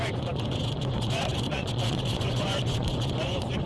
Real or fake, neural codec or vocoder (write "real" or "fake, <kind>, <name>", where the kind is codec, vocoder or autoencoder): fake, vocoder, Vocos